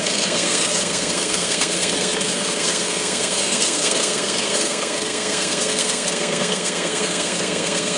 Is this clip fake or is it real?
fake